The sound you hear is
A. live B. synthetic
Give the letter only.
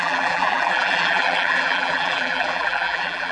B